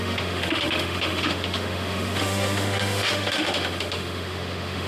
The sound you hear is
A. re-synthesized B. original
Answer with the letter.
A